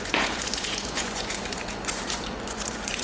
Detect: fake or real fake